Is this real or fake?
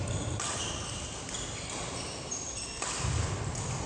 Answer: real